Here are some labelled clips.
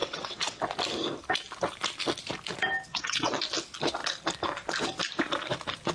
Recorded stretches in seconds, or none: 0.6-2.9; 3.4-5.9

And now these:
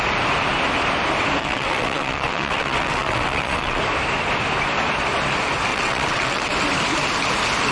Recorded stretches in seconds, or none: 0.0-1.4; 3.8-5.7; 6.5-7.7

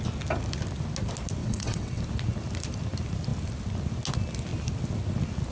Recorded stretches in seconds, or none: 0.0-1.4; 2.0-5.5

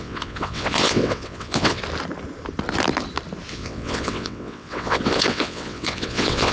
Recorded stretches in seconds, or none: 1.8-3.5

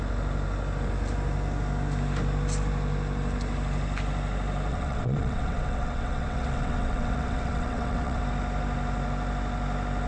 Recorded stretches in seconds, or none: 0.0-4.7; 8.2-10.1